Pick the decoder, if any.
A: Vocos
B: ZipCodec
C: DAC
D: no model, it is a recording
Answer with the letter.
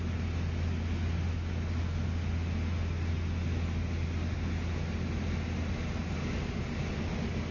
D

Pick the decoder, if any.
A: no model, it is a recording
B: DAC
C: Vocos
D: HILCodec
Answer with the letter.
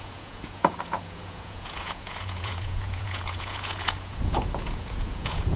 C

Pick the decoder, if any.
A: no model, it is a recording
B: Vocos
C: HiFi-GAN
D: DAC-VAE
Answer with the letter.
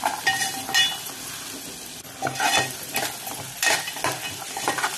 A